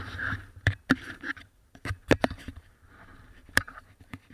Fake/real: fake